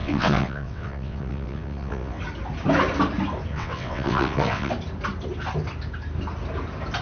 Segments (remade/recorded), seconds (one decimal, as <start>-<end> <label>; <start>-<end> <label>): 0.0-2.2 remade; 2.2-3.5 recorded; 3.5-4.7 remade; 4.7-7.0 recorded